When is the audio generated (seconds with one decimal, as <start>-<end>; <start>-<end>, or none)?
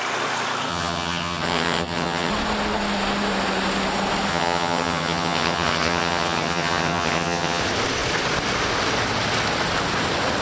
0.7-2.3; 4.3-7.6